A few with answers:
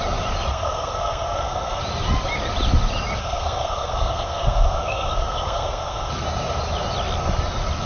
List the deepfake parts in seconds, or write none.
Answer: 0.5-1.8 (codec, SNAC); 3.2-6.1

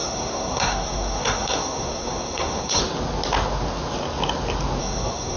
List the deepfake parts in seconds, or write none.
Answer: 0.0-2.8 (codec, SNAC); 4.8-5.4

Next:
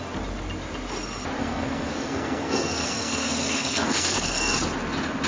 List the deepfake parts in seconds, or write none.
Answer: 1.4-4.6 (codec, SNAC)